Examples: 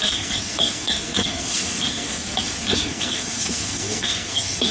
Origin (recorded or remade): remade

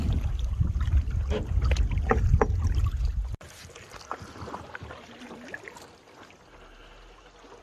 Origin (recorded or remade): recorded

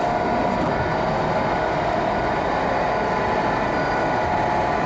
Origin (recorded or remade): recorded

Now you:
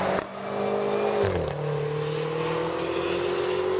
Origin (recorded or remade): recorded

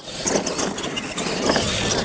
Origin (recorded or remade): recorded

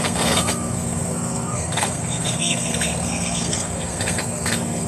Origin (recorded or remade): remade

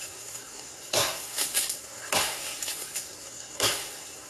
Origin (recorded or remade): remade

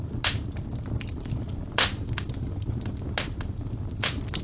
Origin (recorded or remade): recorded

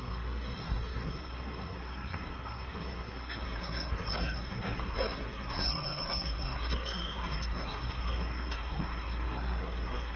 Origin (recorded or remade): remade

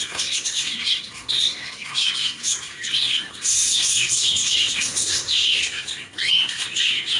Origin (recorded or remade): remade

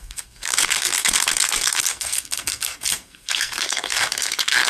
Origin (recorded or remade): remade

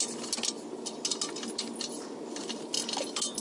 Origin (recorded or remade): recorded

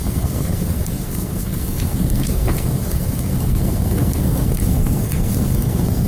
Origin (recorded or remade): remade